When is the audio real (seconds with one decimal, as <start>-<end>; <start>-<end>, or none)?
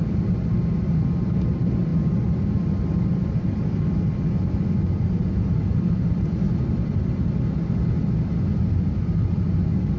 0.0-10.0